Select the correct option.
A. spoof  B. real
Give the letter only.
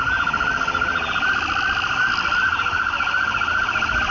B